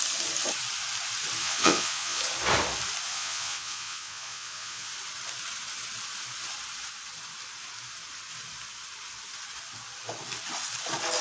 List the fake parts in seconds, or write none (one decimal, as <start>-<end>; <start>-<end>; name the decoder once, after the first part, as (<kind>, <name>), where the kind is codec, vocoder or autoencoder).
1.4-2.2 (vocoder, Vocos); 3.1-4.9